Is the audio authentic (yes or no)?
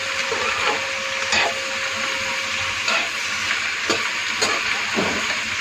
yes